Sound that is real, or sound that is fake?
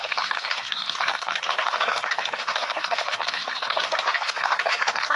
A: fake